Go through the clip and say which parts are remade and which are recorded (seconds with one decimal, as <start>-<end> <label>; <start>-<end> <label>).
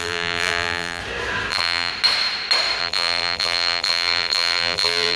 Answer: 0.0-1.0 remade; 1.0-1.5 recorded; 1.5-1.9 remade; 1.9-2.8 recorded; 2.8-5.2 remade